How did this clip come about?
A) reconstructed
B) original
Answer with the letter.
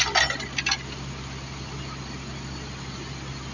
B